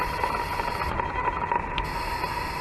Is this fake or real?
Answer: real